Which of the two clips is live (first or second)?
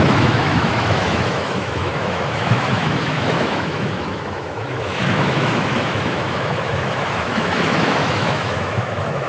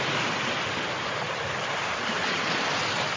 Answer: second